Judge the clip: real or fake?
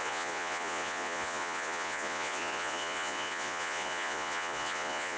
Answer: fake